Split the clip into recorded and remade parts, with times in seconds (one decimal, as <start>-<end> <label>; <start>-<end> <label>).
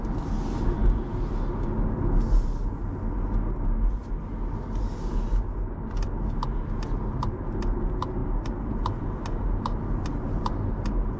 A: 0.0-8.2 recorded; 8.2-11.2 remade